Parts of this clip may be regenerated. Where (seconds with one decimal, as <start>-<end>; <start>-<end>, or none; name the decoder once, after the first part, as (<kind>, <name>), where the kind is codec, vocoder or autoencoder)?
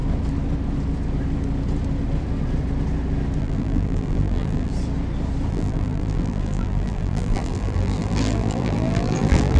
3.4-4.7 (vocoder, BigVGAN v2); 5.5-9.6